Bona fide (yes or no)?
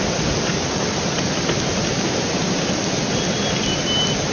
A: yes